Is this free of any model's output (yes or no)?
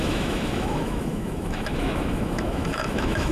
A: no